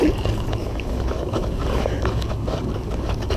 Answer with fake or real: fake